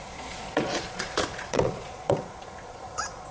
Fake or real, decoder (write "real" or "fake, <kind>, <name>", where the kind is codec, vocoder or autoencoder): fake, vocoder, Vocos